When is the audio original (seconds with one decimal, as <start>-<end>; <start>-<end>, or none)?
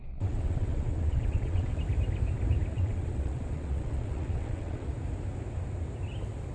1.8-2.7; 4.9-6.5